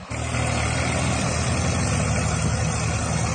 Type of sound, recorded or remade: recorded